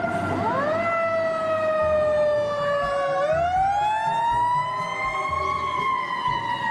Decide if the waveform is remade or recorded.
recorded